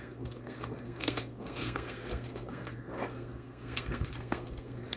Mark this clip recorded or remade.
remade